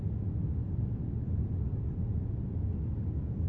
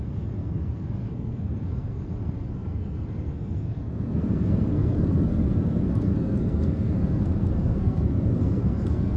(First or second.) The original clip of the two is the first